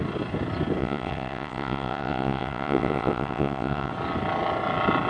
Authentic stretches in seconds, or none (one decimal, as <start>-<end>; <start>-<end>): 0.0-0.8; 3.9-5.1